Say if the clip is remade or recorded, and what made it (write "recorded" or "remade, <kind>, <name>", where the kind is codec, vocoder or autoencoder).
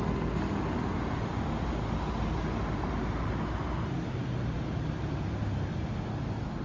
recorded